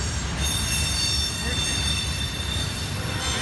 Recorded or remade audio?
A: recorded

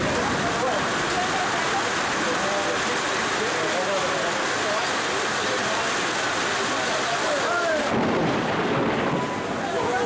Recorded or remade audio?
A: recorded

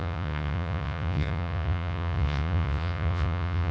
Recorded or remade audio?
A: remade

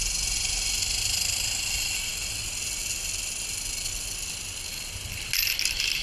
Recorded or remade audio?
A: recorded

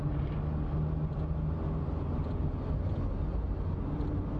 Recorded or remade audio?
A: recorded